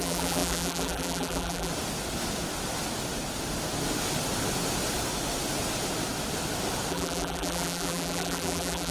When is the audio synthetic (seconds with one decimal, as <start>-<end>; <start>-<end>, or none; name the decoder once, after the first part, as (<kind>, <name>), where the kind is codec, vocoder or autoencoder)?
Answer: 0.0-1.7 (vocoder, BigVGAN v2); 6.9-8.9